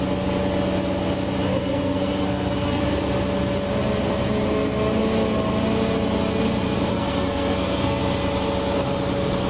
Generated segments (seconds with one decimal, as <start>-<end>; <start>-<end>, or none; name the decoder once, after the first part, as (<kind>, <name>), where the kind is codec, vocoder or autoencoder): 1.5-2.8 (codec, SNAC); 6.9-8.0